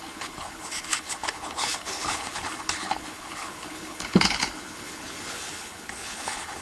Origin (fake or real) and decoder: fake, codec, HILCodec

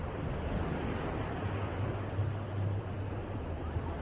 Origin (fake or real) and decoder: real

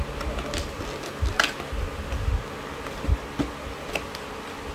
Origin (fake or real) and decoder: real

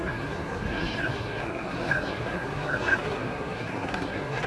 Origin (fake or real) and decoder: fake, codec, SNAC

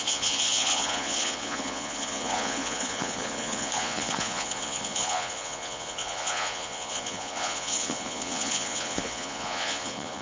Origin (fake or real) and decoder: fake, vocoder, Vocos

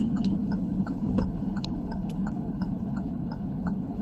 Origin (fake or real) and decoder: fake, codec, HILCodec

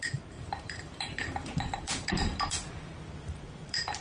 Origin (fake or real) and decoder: fake, vocoder, BigVGAN v2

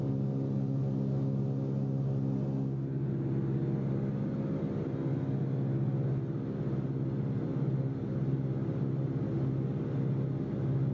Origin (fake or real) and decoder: real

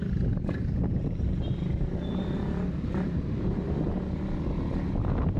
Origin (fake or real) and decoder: real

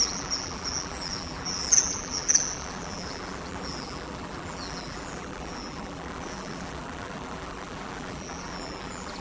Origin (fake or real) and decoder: fake, vocoder, BigVGAN v2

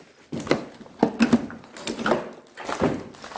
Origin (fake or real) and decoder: real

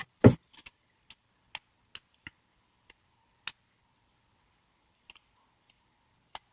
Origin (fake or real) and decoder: real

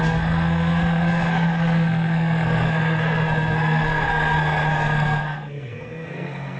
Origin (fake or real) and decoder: fake, codec, SNAC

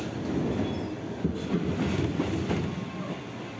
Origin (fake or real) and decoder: real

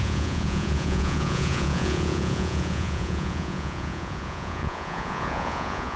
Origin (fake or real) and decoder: fake, vocoder, Vocos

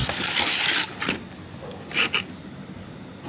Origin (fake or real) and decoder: real